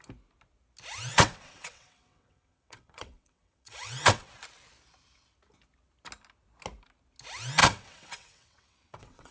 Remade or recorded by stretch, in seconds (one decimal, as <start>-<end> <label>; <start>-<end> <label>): 0.0-1.1 recorded; 1.1-4.3 remade; 4.3-7.6 recorded; 7.6-9.3 remade